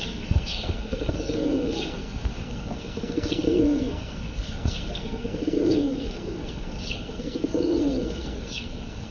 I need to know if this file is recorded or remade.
remade